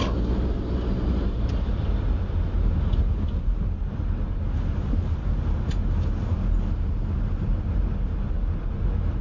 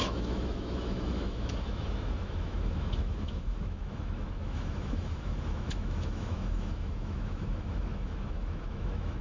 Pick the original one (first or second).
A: first